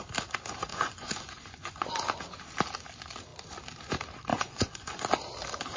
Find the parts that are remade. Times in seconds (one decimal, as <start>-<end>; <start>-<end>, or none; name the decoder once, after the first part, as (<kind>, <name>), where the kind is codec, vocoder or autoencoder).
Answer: 0.7-1.9 (vocoder, Vocos); 4.3-5.0